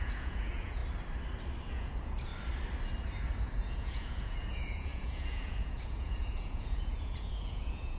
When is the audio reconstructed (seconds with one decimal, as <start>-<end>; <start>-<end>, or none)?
0.0-0.8; 1.7-2.3; 3.4-8.0

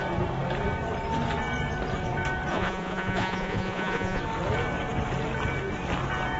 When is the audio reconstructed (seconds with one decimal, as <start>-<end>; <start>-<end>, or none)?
2.5-4.2

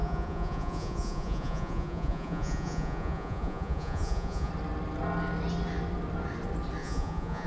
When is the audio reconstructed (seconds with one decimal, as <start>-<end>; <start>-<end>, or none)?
0.0-4.5; 6.8-7.5